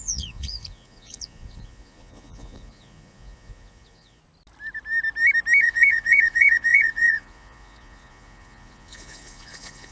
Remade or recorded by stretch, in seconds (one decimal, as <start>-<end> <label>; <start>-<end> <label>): 0.0-4.2 remade; 4.2-5.6 recorded; 5.6-9.9 remade